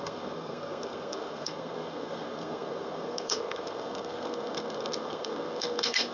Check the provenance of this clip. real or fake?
fake